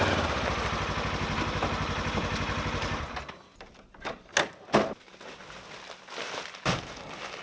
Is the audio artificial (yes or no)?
no